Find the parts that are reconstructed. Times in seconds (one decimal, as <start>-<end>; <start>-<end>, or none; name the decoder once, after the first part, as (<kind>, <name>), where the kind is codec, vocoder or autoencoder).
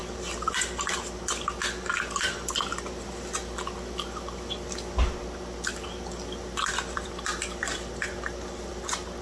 0.0-0.6 (vocoder, BigVGAN v2); 6.7-8.7